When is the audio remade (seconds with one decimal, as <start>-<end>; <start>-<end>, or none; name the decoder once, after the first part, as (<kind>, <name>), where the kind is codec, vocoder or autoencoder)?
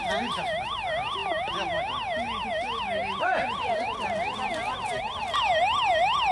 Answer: none